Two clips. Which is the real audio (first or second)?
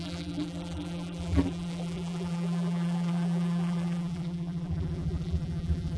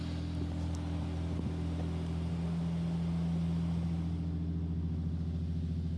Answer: second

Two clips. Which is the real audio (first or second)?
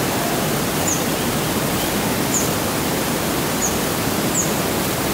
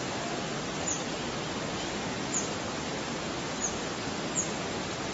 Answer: second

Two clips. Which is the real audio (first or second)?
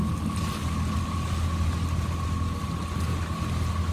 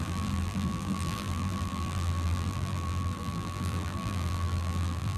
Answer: first